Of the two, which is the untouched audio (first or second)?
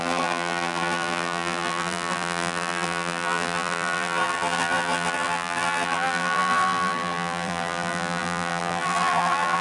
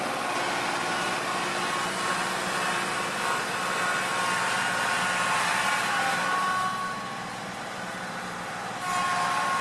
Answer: second